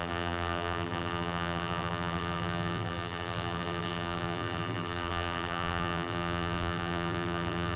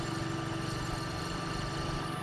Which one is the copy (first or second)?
first